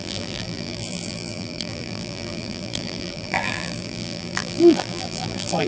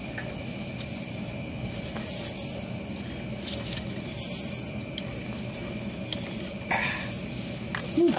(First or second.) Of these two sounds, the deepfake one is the first